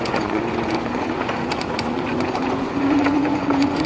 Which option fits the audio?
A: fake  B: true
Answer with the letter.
A